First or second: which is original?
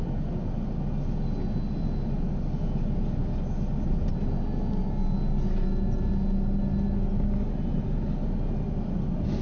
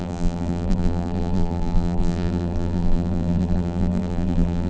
first